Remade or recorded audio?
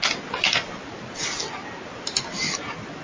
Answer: recorded